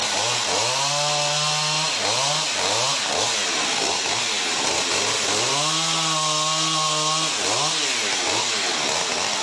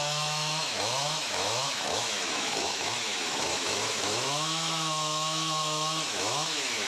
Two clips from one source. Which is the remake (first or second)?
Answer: second